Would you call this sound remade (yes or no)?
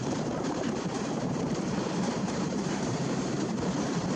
yes